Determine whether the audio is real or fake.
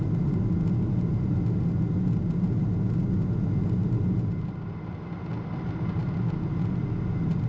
real